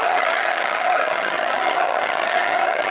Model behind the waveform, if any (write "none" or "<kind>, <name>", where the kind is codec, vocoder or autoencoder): vocoder, HiFi-GAN